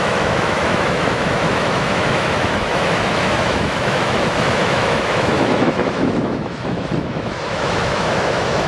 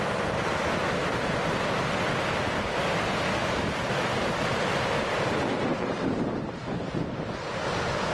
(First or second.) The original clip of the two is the second